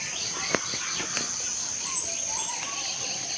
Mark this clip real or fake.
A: real